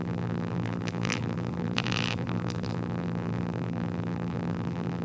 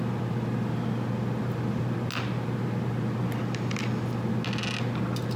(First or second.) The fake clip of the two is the first